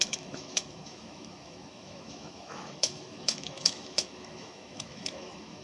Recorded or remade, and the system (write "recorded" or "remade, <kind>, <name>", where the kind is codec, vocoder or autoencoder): remade, autoencoder, DAC-VAE